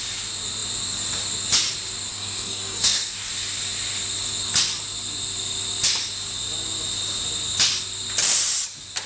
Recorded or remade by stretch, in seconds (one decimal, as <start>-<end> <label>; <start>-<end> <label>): 0.0-2.1 recorded; 2.1-3.3 remade; 3.3-9.1 recorded